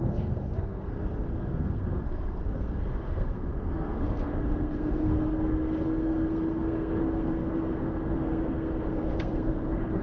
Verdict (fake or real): fake